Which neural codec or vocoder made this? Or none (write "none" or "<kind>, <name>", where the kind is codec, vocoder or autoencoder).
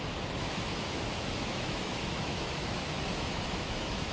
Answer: autoencoder, DAC-VAE